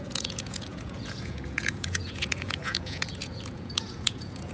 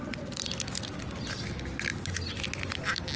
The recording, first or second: second